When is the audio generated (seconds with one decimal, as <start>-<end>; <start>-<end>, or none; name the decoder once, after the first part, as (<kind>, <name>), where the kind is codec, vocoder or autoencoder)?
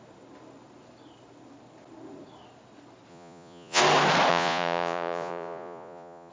3.1-3.8 (vocoder, Vocos); 4.3-6.3